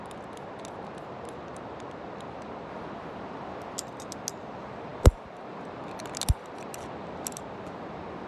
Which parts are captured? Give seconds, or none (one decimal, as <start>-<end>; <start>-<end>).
0.0-8.3